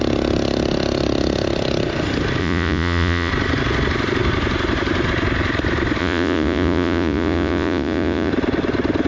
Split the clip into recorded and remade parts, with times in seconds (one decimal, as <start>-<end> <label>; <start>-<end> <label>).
0.0-2.4 recorded; 2.4-3.3 remade; 3.3-6.0 recorded; 6.0-8.3 remade; 8.3-9.1 recorded